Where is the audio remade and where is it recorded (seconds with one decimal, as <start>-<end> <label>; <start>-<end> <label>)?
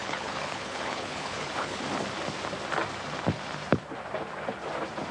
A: 0.0-1.8 remade; 1.8-5.1 recorded